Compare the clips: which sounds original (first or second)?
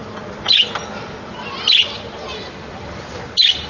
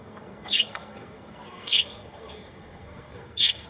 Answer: first